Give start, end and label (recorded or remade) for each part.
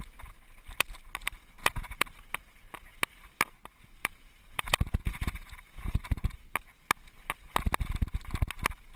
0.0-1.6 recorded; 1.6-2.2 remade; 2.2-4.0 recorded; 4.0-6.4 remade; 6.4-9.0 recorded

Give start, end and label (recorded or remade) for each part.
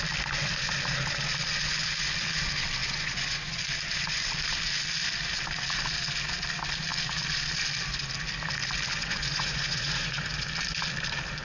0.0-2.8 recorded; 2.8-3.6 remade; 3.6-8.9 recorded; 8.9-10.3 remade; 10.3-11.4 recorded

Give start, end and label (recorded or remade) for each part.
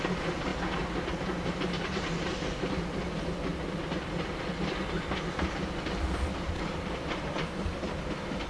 0.0-8.5 recorded